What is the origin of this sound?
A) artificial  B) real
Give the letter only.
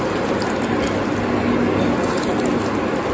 B